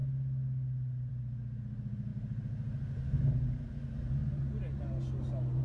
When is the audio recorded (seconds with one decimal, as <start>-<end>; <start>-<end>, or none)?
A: 0.0-5.6